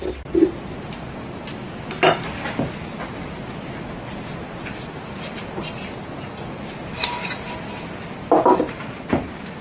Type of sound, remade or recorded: recorded